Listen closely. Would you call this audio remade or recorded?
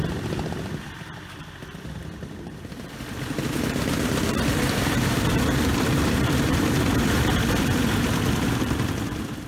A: remade